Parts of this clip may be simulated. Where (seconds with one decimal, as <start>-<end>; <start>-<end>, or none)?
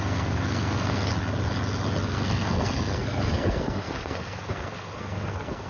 0.0-1.1; 2.1-5.7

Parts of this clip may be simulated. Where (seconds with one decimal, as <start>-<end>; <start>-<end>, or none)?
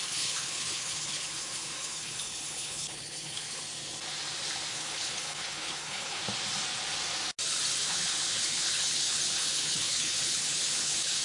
0.0-3.6; 4.7-6.2; 7.8-11.2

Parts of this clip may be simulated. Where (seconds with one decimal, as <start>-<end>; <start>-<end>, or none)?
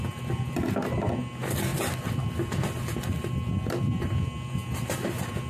none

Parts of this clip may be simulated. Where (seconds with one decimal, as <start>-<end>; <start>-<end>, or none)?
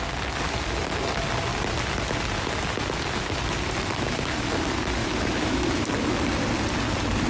5.0-5.9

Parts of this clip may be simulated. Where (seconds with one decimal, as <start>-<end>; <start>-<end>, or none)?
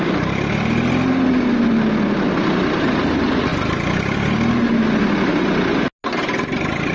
none